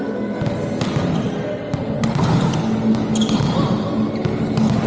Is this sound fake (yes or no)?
no